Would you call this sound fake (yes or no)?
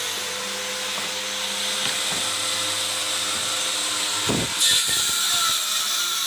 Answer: no